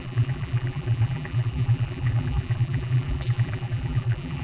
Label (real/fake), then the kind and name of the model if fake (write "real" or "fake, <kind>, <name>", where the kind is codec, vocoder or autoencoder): fake, vocoder, BigVGAN v2